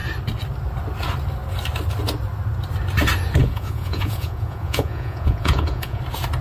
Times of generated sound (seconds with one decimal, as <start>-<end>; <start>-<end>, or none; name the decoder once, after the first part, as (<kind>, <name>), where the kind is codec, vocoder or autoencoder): 3.4-6.0 (vocoder, Vocos)

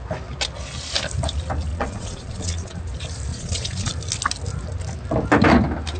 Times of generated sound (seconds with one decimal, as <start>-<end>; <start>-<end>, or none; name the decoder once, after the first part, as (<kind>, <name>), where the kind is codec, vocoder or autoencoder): 1.7-2.8 (vocoder, Vocos); 3.3-3.9

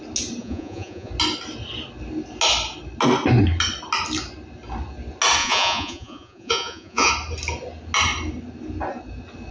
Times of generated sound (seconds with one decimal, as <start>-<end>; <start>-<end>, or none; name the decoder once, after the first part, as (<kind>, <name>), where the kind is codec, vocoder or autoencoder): 0.4-1.1 (vocoder, Vocos); 5.4-7.1

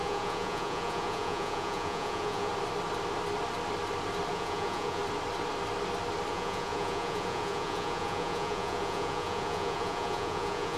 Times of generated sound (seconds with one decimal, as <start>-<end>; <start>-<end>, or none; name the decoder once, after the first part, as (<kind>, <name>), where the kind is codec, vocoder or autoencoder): 0.0-2.5 (vocoder, Vocos); 4.3-5.0; 6.3-10.8

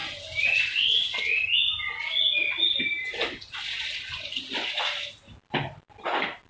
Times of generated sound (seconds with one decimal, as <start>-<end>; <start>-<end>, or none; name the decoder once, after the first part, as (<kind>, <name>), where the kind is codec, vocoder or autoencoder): none

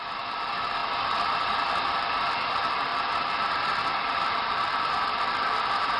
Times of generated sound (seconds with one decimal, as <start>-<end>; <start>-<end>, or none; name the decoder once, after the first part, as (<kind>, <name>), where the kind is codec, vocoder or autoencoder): none

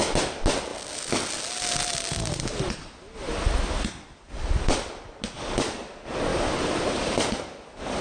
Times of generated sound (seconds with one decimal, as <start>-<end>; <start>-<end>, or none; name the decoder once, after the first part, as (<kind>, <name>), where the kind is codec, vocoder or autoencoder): none